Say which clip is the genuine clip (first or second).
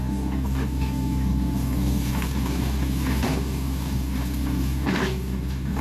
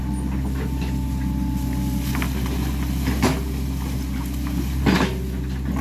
second